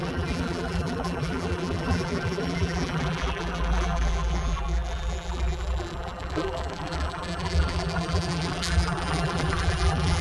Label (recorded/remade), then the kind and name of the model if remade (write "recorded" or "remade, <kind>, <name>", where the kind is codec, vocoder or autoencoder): remade, vocoder, BigVGAN v2